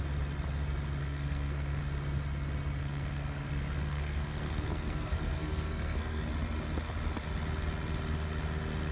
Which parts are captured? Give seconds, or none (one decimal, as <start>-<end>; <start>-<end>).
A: 0.0-1.0; 1.8-2.8; 6.3-8.9